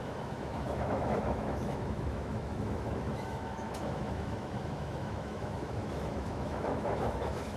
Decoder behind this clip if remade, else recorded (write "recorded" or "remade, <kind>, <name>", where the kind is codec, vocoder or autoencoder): remade, autoencoder, DAC-VAE